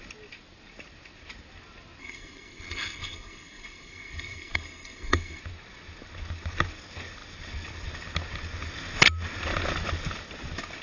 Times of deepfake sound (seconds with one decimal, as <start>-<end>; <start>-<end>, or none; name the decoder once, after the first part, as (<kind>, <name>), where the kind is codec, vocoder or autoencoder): 2.0-5.4 (codec, SNAC)

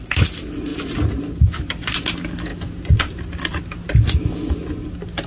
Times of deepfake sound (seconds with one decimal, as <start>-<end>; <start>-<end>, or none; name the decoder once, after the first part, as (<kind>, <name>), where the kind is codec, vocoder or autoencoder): none

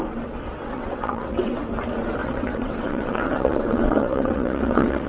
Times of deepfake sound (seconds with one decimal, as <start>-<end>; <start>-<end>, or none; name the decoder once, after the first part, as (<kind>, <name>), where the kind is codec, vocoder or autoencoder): 0.6-1.6 (vocoder, WaveNeXt); 2.2-5.1

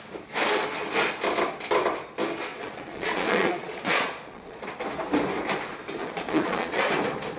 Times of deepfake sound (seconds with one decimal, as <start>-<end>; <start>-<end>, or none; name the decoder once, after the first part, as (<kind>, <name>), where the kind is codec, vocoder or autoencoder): 2.5-4.6 (vocoder, Vocos); 6.0-6.8